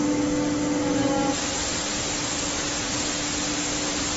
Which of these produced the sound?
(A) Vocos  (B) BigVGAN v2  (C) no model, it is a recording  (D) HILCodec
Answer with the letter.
C